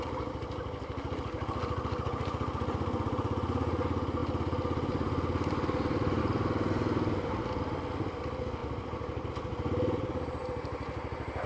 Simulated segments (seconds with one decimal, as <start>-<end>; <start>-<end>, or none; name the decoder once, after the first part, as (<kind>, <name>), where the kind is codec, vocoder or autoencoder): 8.6-9.3 (vocoder, BigVGAN v2)